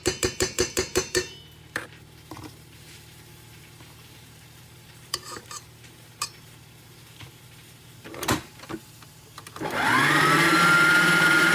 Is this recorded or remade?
remade